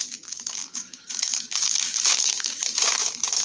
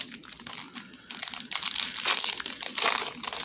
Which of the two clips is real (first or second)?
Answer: second